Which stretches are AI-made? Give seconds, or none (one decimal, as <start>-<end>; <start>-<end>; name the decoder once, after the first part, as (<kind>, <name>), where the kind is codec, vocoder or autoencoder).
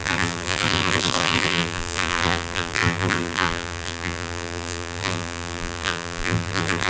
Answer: 0.0-6.9 (vocoder, BigVGAN v2)